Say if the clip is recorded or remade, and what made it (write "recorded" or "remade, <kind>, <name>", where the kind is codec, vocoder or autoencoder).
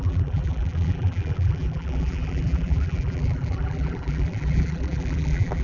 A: remade, vocoder, BigVGAN v2